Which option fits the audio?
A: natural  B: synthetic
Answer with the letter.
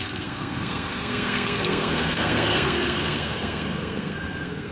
B